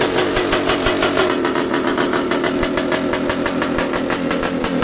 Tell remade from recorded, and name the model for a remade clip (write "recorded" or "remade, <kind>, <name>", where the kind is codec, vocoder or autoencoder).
recorded